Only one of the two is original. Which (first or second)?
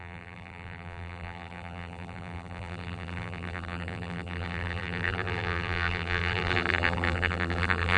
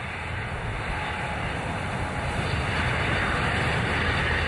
second